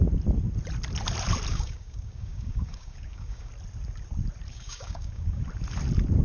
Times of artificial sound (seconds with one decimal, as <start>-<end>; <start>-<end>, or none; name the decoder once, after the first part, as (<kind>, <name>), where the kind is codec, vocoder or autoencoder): 1.5-3.5 (codec, DAC); 4.5-5.4